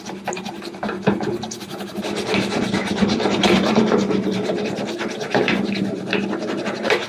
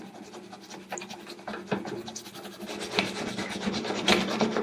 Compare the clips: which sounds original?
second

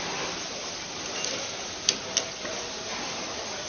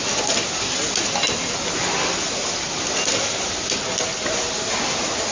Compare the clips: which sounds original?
second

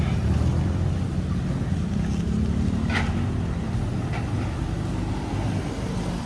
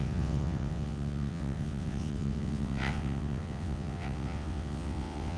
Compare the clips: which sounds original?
first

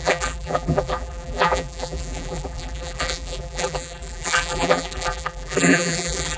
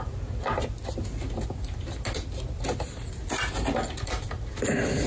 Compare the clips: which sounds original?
second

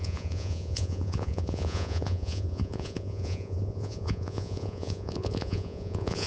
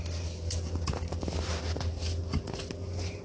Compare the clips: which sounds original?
second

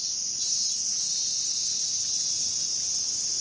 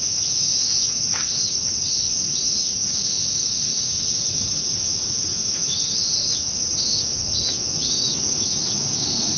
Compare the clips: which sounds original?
first